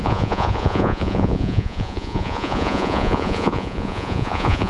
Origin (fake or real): fake